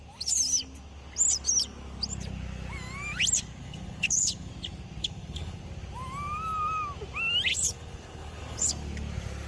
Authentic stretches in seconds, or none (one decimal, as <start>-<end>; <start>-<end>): 0.0-3.6; 4.5-5.0; 5.6-7.5; 8.7-9.5